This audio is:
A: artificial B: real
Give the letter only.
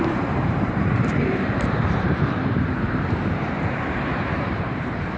A